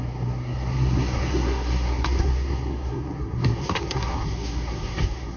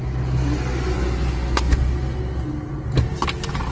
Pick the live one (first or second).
second